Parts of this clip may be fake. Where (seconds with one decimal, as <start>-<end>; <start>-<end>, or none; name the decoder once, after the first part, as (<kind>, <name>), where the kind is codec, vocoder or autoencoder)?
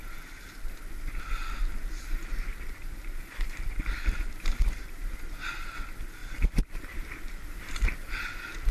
2.5-5.1 (vocoder, BigVGAN v2); 6.2-8.2